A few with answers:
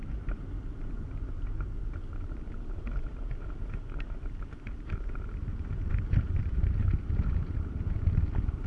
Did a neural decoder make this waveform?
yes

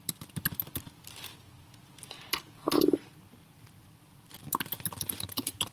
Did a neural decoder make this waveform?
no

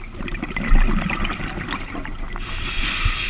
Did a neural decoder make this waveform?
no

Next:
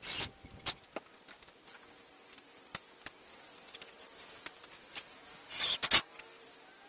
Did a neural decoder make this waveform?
no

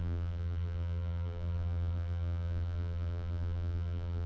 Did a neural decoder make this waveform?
yes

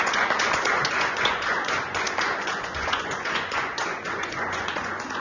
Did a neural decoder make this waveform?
yes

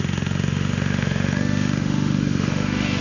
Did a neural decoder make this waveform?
yes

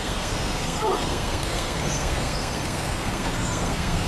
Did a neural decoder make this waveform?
yes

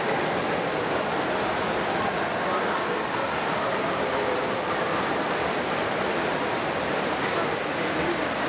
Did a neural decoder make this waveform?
no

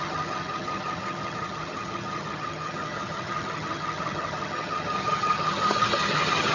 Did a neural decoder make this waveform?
yes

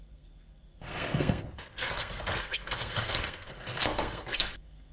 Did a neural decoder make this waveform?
yes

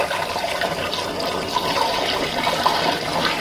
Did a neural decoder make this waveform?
no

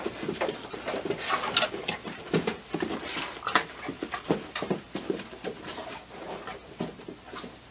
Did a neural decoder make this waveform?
no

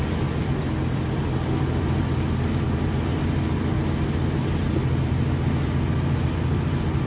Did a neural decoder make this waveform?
no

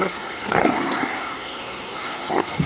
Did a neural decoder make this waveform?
yes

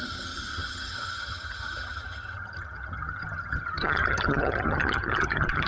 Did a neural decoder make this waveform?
yes